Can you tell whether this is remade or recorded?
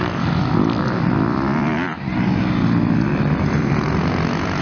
recorded